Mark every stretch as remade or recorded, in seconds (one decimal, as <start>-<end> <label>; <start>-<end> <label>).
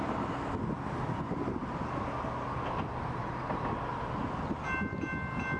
0.0-5.6 recorded